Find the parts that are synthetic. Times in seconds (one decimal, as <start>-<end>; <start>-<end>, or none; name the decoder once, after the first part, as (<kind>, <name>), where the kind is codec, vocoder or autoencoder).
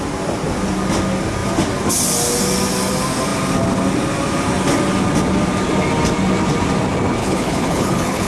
7.2-8.3 (codec, HILCodec)